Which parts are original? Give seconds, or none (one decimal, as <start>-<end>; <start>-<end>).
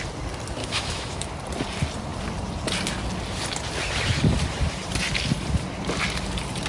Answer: 0.0-0.6; 1.3-6.7